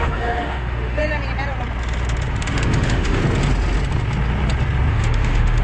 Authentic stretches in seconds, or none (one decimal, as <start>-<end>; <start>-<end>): 1.0-2.3; 3.2-4.9